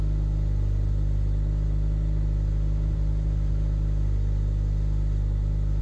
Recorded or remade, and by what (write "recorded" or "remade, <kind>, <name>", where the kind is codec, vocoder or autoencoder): recorded